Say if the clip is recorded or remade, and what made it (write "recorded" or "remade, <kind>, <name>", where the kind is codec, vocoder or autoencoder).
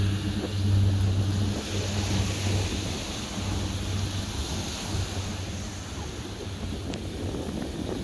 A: recorded